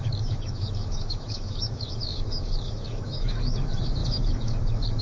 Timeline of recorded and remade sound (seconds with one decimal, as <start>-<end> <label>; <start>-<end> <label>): 0.0-5.0 remade